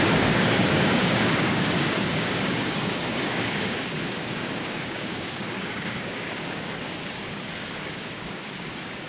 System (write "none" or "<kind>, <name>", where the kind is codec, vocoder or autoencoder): codec, DAC